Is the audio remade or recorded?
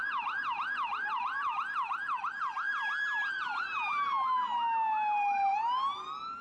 recorded